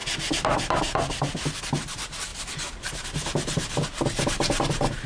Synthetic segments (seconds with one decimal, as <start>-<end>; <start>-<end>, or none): none